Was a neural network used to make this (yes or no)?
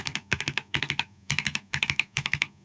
yes